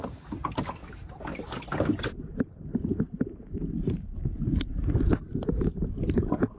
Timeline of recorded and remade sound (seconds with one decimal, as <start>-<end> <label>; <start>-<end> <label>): 0.0-0.8 recorded; 0.8-2.6 remade; 2.6-6.6 recorded